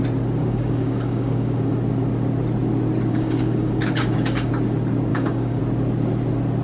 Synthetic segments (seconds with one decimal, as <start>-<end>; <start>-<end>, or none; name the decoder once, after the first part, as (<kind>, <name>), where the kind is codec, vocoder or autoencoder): 0.4-1.7 (codec, DAC); 3.1-4.5; 5.1-5.6